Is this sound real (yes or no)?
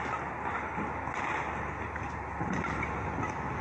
yes